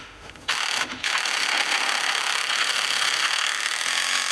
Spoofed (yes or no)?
yes